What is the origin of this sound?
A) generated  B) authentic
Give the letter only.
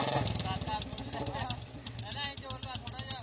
B